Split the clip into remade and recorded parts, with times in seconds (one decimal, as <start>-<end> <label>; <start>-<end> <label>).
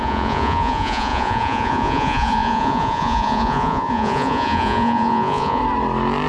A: 0.0-5.6 remade; 5.6-6.3 recorded